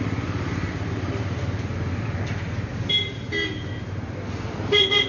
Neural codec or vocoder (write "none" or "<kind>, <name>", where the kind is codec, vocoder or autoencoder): none